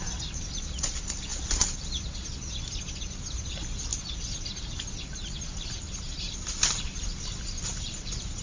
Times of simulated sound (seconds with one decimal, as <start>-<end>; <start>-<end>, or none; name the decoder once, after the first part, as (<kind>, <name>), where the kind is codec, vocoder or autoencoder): none